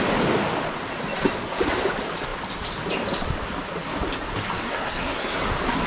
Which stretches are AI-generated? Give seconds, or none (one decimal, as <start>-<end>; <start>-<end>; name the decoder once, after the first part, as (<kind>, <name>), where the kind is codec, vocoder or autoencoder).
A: 4.6-5.5 (codec, SNAC)

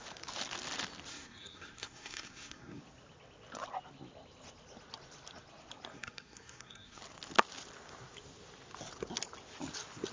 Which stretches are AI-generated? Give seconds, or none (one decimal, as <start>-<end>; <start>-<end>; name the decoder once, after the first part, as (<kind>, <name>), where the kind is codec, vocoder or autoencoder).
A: 1.1-2.8 (codec, SNAC); 5.9-7.0

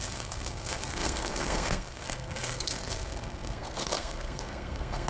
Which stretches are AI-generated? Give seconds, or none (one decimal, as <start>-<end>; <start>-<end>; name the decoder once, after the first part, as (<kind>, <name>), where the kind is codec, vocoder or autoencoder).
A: 0.0-5.1 (codec, SNAC)

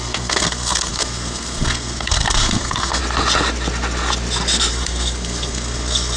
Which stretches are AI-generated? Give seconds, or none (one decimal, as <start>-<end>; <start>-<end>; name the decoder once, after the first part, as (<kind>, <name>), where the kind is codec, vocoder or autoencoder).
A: 0.0-3.0 (codec, SNAC); 4.7-6.2

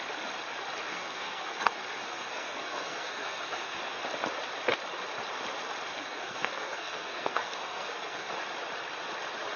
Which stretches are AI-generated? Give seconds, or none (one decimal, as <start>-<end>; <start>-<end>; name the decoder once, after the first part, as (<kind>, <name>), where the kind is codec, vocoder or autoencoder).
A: 0.9-4.0 (codec, SNAC); 5.9-8.3